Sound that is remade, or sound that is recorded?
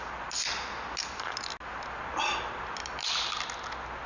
recorded